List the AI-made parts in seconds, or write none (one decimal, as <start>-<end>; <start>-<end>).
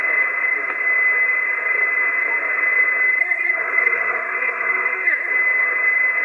3.2-5.3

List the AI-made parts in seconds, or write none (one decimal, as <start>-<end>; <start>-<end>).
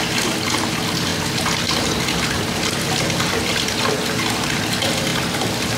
none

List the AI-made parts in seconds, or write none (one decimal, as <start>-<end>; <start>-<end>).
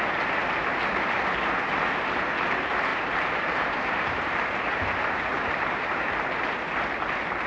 2.9-6.0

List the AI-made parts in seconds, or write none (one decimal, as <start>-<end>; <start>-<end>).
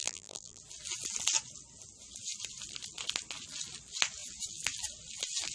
0.0-0.6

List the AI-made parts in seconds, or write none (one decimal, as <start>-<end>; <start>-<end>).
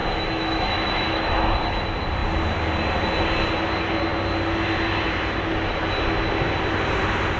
0.0-1.5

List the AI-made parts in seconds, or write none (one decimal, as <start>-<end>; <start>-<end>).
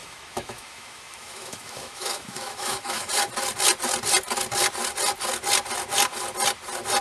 0.0-3.1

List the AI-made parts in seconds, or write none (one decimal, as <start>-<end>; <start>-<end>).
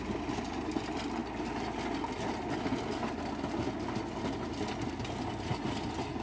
none